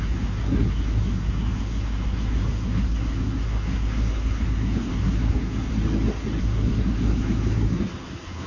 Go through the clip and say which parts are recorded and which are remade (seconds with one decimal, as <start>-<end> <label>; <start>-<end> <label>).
0.0-5.7 remade; 5.7-6.4 recorded; 6.4-8.5 remade